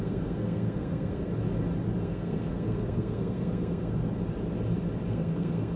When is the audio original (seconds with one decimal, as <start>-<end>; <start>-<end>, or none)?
1.3-2.0; 4.0-5.1